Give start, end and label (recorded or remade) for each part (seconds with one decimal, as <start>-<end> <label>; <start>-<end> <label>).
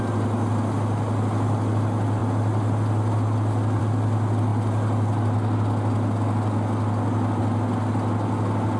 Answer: 0.0-8.8 recorded